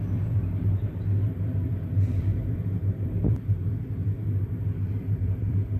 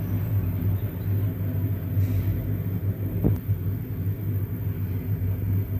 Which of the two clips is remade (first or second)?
first